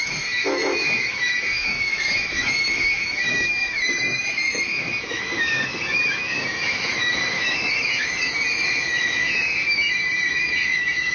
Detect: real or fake fake